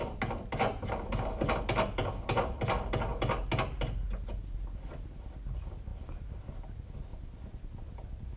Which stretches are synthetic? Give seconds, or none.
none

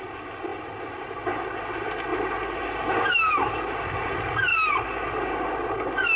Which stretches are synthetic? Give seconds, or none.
none